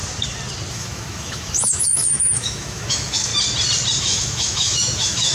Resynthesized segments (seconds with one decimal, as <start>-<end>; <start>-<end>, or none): 0.7-3.3; 4.0-5.3